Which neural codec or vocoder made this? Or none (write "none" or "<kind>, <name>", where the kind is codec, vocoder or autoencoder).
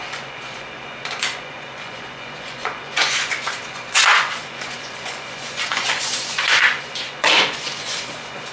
vocoder, Vocos